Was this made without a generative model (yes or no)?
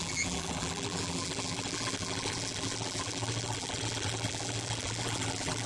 no